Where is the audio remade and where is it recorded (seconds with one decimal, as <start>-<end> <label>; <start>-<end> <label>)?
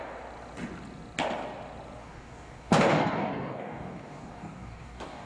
0.0-2.0 recorded; 2.0-5.3 remade